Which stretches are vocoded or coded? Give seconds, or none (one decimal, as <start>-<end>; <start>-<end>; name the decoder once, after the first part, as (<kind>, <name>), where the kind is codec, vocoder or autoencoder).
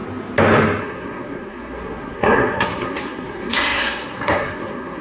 0.8-5.0 (codec, SNAC)